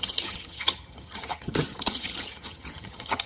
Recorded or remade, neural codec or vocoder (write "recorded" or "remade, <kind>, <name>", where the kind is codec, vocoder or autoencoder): remade, vocoder, HiFi-GAN